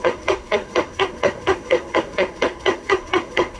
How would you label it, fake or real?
fake